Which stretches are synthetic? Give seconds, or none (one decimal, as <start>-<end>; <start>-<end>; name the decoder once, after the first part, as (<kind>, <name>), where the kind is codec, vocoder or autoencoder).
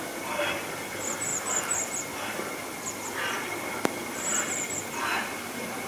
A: none